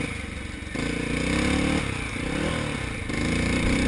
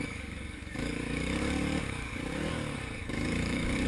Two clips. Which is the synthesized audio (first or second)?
second